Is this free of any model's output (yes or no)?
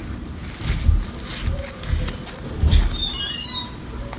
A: yes